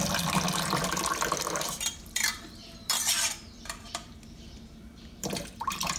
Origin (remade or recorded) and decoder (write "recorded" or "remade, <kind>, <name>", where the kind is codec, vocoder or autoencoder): remade, vocoder, BigVGAN v2